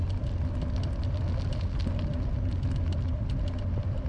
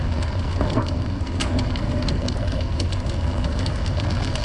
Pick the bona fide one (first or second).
first